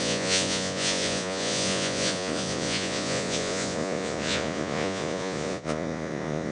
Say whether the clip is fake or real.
fake